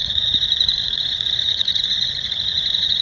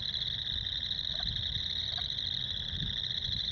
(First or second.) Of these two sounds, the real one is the second